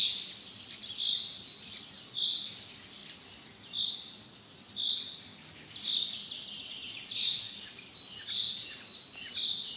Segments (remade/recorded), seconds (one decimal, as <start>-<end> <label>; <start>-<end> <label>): 0.0-9.8 recorded